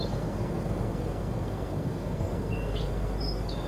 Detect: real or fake fake